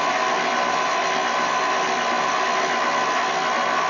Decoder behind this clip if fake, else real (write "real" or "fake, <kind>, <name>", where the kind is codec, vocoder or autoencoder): real